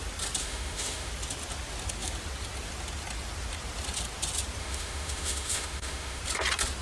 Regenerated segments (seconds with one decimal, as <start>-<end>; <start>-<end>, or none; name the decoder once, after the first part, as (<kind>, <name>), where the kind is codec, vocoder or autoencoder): 0.4-1.1 (autoencoder, DAC-VAE); 4.6-6.2